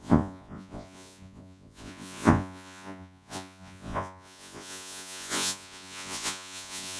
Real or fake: fake